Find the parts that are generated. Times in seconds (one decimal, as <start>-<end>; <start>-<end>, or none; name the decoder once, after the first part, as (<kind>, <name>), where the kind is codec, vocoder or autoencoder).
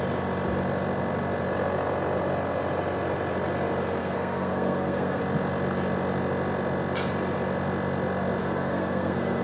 4.0-5.2 (codec, SNAC); 8.4-9.4